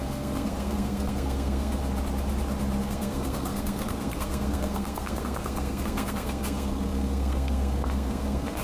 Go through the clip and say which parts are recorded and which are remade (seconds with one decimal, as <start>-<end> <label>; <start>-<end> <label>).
0.0-1.8 remade; 1.8-2.8 recorded; 2.8-8.6 remade